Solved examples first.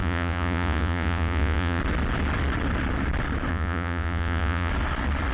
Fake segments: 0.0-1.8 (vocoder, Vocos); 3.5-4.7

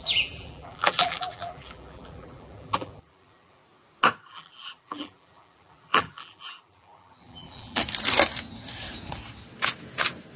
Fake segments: 0.0-3.6 (vocoder, BigVGAN v2); 4.3-7.8

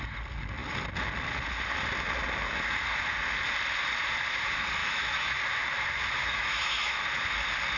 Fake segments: 4.8-5.4 (autoencoder, DAC-VAE); 6.2-7.0